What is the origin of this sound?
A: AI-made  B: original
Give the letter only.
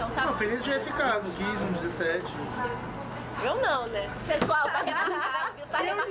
B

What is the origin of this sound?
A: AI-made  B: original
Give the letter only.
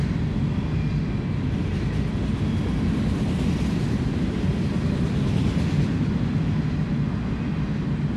B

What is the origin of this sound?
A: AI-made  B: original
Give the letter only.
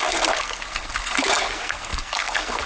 A